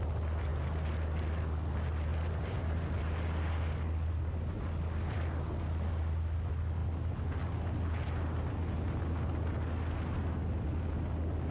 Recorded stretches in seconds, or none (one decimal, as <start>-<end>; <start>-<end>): 0.0-2.1; 3.0-11.5